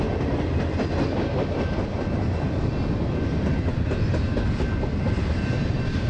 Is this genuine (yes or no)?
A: yes